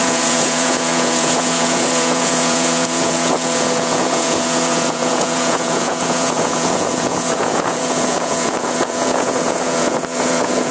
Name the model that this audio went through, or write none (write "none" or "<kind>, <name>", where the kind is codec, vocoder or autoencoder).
vocoder, Vocos